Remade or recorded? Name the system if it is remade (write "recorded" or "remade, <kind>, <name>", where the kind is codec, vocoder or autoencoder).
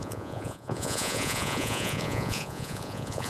remade, vocoder, Vocos